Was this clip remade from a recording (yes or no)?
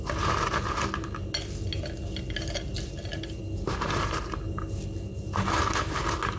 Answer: no